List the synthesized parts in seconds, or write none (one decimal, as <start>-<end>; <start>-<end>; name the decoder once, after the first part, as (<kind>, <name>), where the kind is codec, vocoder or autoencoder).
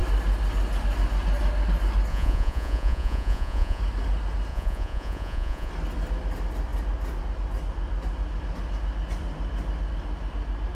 2.1-3.8 (vocoder, Vocos); 4.5-5.7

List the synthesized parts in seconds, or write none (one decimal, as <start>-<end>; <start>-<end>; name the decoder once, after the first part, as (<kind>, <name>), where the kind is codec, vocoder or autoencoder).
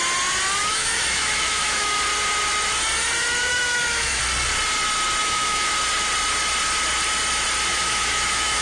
0.6-2.0 (autoencoder, DAC-VAE); 3.5-4.2; 5.2-5.7; 7.7-8.6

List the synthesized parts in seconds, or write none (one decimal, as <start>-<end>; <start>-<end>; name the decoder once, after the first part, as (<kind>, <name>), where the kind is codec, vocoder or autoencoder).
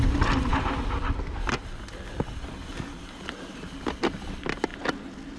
none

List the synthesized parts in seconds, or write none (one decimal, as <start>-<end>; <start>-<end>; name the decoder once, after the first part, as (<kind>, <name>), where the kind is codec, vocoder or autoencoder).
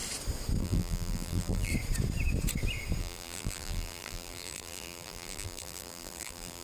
0.6-1.7 (vocoder, BigVGAN v2); 3.0-6.6